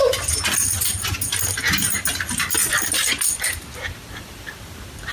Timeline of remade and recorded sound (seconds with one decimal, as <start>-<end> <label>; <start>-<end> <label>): 0.0-5.1 recorded